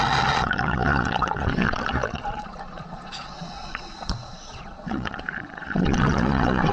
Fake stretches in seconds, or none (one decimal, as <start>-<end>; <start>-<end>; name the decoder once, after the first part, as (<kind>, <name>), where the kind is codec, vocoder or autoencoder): 0.0-6.7 (vocoder, Vocos)